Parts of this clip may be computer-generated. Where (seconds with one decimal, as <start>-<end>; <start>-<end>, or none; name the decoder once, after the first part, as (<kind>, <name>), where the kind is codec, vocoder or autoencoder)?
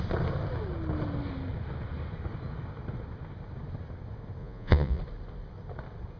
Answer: 4.4-5.0 (vocoder, Vocos)